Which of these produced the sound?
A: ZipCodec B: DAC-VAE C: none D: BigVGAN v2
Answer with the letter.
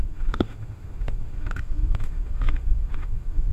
B